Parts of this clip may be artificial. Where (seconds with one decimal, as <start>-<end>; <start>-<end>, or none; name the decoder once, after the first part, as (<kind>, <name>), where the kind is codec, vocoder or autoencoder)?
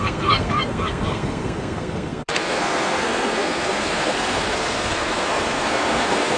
0.0-6.4 (codec, SNAC)